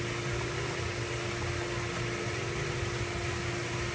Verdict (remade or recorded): recorded